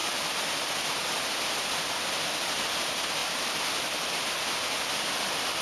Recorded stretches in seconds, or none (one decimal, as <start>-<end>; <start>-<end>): 0.0-5.6